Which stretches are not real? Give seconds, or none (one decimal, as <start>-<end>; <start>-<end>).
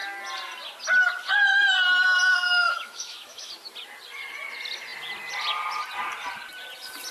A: 2.3-3.5